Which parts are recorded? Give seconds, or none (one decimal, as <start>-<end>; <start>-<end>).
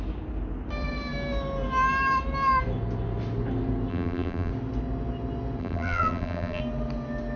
0.0-3.9; 4.5-5.6; 6.6-7.4